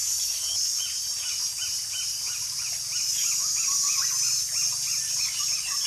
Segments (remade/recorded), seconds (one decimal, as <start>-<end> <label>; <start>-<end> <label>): 0.0-5.9 recorded